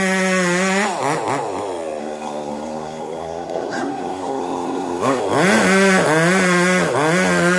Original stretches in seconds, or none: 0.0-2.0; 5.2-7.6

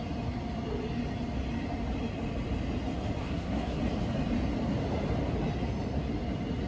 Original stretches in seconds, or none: 0.0-3.2; 3.8-6.7

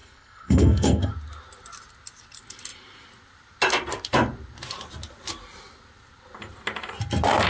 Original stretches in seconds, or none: 1.1-7.5

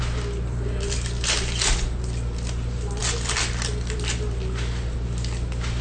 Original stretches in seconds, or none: 0.0-5.8